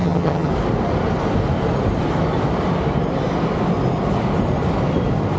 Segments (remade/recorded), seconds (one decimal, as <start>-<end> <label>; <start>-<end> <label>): 0.0-0.5 remade; 0.5-5.4 recorded